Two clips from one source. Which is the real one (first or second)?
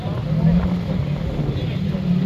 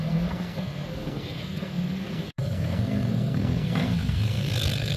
first